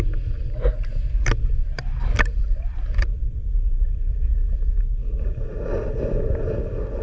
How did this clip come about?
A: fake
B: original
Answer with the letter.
B